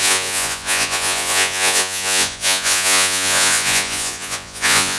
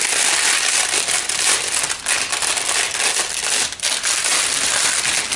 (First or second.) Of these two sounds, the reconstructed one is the first